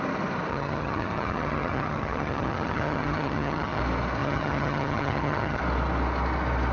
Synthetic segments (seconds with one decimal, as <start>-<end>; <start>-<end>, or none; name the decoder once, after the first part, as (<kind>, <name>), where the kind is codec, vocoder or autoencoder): 0.5-3.8 (vocoder, HiFi-GAN); 4.2-5.6